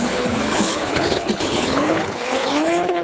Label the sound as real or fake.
fake